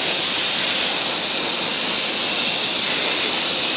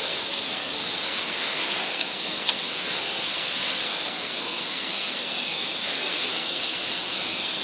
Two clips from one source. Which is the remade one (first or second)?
second